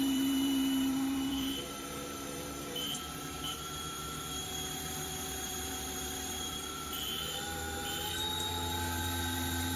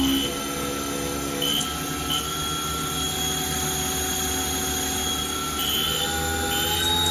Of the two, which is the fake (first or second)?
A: first